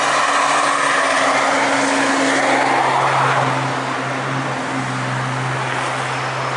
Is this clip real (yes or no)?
yes